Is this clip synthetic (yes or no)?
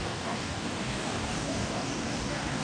yes